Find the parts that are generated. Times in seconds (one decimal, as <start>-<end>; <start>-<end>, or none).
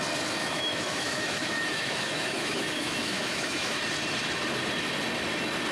0.4-3.8